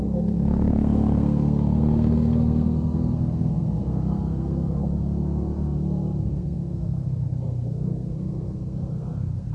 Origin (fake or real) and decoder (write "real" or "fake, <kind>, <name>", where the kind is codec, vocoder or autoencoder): fake, codec, SNAC